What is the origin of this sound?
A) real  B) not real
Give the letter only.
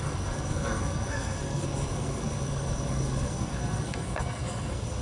B